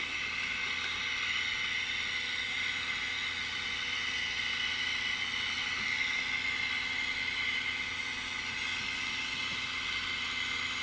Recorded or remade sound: recorded